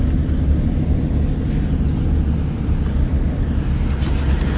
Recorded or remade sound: recorded